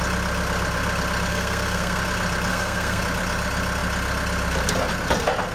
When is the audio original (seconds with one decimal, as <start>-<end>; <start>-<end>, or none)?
0.0-1.3; 2.0-2.5; 3.0-5.5